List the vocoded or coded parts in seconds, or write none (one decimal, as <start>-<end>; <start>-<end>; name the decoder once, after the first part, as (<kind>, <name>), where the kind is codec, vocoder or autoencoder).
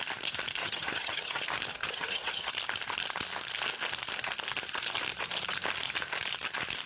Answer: 0.6-1.4 (vocoder, HiFi-GAN); 1.8-2.5